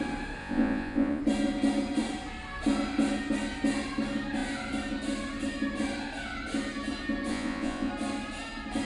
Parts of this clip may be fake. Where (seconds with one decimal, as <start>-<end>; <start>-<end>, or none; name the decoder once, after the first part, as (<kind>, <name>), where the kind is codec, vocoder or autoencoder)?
0.4-1.2 (vocoder, Vocos); 7.3-7.9